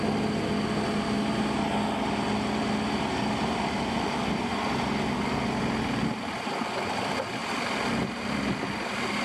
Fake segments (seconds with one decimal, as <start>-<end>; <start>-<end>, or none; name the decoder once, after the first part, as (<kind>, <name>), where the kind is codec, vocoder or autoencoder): none